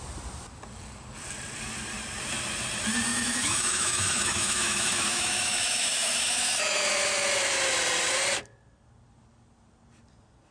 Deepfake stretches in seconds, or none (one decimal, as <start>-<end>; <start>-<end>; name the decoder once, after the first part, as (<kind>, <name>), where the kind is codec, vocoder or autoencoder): 3.1-6.9 (autoencoder, DAC-VAE)